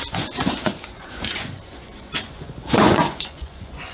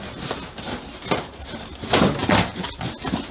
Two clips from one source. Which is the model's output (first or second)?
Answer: first